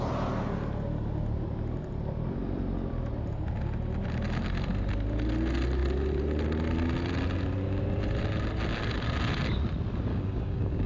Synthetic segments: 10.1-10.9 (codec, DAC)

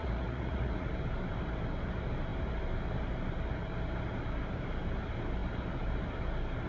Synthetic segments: 0.0-0.9 (vocoder, Vocos)

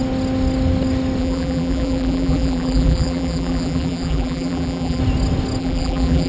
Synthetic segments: 1.2-5.0 (vocoder, BigVGAN v2); 5.6-6.3

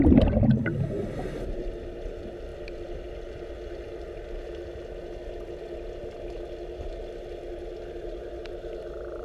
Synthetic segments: none

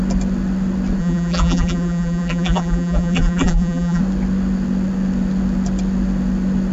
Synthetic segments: 1.0-4.0 (vocoder, BigVGAN v2)

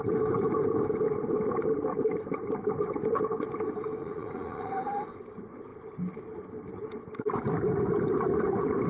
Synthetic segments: 4.0-4.7 (vocoder, Vocos)